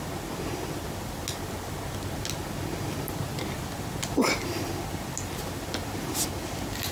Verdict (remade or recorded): recorded